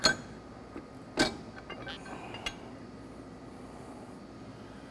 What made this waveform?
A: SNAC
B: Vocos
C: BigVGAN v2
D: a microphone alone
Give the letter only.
D